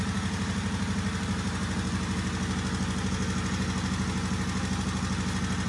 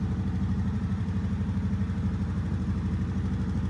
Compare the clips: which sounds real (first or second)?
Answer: first